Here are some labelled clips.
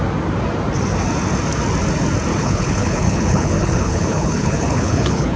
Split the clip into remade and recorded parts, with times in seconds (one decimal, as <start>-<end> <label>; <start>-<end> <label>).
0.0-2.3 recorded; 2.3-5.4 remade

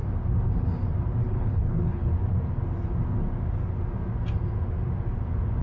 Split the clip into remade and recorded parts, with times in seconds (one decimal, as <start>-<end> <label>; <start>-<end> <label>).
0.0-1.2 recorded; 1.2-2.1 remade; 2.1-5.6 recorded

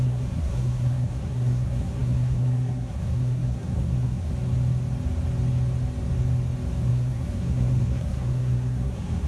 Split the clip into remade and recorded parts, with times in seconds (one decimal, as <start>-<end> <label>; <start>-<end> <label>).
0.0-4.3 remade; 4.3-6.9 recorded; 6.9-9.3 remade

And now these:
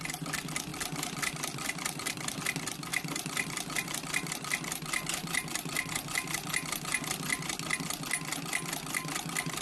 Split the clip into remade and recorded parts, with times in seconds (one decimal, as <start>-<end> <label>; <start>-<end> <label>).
0.0-0.7 recorded; 0.7-2.4 remade; 2.4-2.9 recorded; 2.9-4.3 remade; 4.3-9.6 recorded